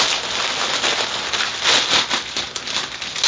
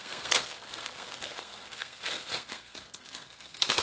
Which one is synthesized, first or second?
second